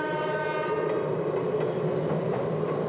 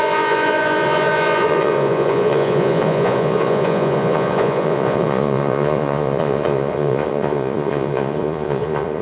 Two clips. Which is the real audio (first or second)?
first